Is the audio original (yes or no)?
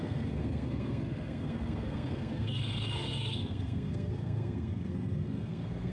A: no